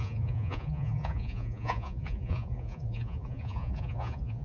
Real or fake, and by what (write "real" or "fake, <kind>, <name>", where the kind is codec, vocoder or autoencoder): fake, vocoder, Vocos